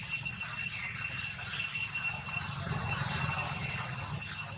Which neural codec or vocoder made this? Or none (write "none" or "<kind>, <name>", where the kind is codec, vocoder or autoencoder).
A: none